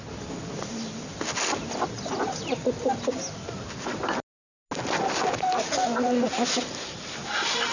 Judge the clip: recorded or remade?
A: recorded